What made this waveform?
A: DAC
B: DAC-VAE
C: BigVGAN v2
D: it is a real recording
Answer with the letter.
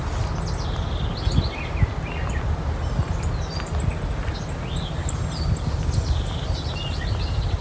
D